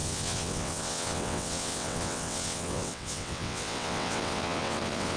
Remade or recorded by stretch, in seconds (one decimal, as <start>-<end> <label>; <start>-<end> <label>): 0.0-5.2 remade